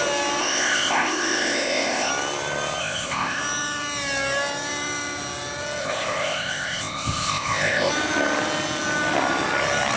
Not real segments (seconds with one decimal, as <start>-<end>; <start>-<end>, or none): 0.4-2.1; 2.8-3.4; 5.8-7.9